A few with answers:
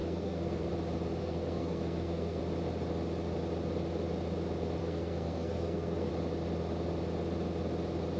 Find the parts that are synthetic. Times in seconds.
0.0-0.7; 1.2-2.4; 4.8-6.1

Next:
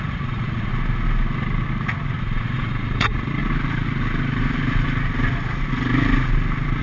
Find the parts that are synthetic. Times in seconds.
0.0-0.7; 2.2-3.4

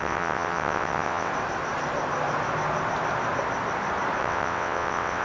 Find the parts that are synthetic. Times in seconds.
0.0-1.3; 4.2-5.2

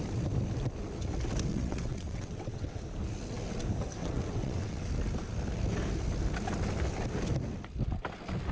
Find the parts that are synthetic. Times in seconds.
1.5-2.8; 4.0-4.9

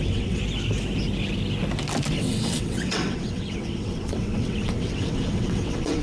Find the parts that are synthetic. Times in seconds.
0.0-0.4; 2.1-6.0

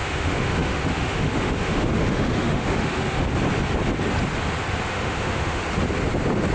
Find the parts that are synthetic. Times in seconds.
0.0-3.2; 4.9-5.6